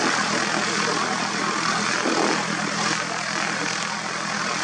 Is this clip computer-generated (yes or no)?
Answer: no